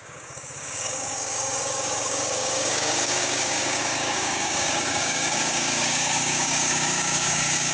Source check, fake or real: fake